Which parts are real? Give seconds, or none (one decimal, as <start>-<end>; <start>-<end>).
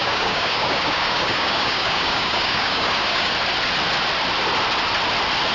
3.3-5.5